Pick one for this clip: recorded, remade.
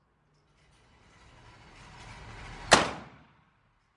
recorded